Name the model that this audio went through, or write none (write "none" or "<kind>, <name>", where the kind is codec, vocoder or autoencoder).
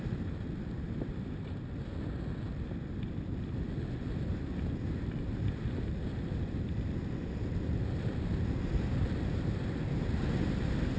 none